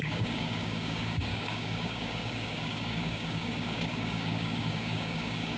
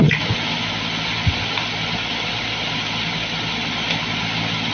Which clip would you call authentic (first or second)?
second